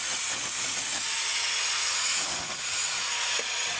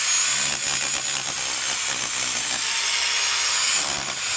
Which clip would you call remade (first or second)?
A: first